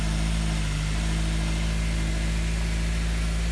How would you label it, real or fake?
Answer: real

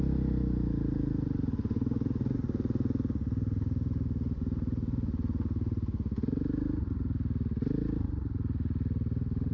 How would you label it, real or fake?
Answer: real